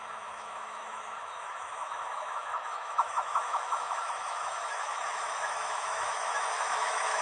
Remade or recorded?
remade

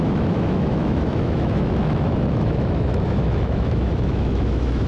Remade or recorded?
remade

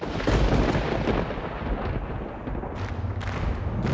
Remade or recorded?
recorded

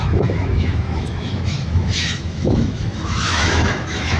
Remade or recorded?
remade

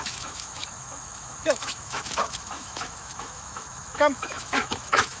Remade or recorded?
remade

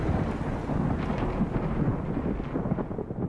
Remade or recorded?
recorded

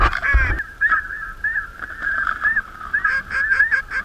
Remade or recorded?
recorded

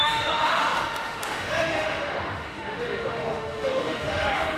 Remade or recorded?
remade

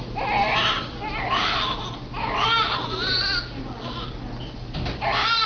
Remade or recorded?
recorded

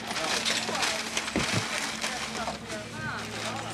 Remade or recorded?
recorded